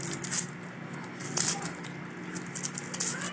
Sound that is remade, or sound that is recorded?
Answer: recorded